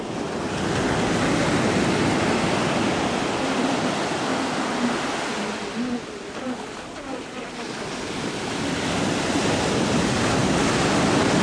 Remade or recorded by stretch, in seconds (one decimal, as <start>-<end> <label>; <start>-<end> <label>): 0.0-11.4 recorded